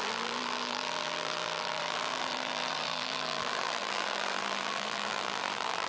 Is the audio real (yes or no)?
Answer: no